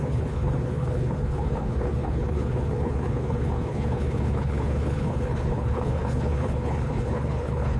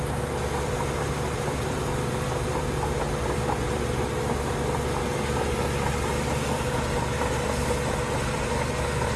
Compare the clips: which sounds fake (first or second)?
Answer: first